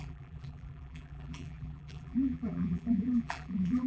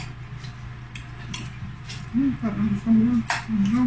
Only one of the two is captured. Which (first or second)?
second